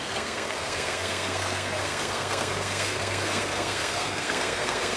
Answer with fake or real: fake